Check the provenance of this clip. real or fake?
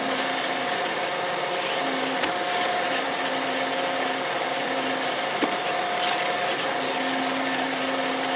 real